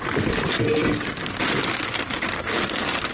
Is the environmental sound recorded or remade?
recorded